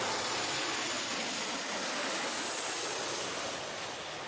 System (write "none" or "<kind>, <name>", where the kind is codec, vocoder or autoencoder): none